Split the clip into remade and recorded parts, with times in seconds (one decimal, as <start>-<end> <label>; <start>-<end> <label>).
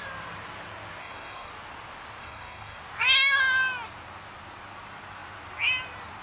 0.0-1.0 recorded; 1.0-1.5 remade; 1.5-2.2 recorded; 2.2-2.8 remade; 2.8-6.2 recorded